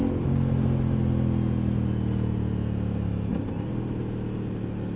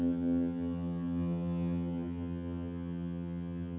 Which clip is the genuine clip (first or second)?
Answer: first